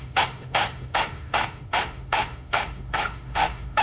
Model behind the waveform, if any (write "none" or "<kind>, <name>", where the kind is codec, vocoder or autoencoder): autoencoder, DAC-VAE